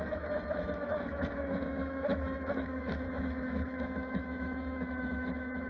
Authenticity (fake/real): fake